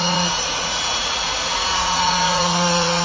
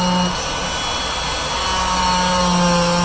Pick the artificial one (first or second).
first